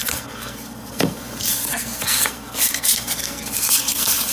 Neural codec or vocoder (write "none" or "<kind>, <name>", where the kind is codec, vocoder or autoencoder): codec, SNAC